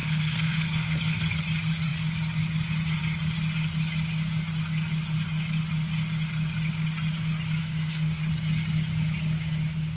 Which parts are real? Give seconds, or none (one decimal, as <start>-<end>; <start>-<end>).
1.4-7.6; 8.2-10.0